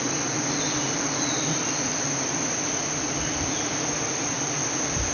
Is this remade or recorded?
recorded